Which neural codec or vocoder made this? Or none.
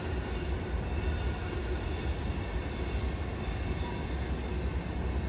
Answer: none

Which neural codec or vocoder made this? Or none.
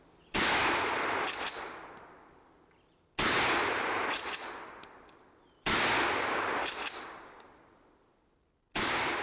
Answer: none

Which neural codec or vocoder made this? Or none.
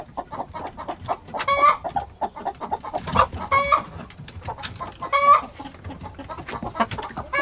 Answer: none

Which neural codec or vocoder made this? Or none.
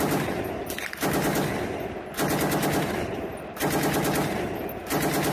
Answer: none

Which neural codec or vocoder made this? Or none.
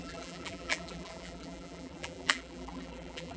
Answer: vocoder, BigVGAN v2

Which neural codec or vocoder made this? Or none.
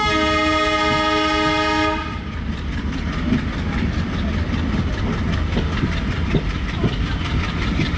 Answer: none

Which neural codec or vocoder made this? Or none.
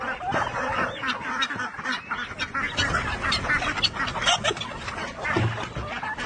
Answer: none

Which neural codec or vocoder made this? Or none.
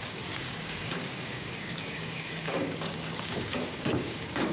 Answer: codec, DAC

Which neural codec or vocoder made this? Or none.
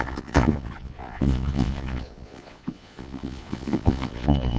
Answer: vocoder, Vocos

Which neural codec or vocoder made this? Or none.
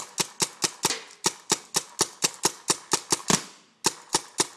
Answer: none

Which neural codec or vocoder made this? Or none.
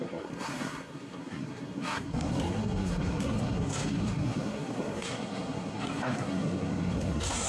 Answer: codec, SNAC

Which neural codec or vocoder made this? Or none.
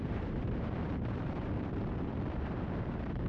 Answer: vocoder, BigVGAN v2